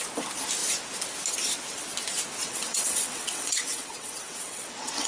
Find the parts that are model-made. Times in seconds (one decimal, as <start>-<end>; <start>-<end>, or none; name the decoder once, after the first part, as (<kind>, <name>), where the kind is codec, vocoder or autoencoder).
2.4-5.1 (vocoder, WaveNeXt)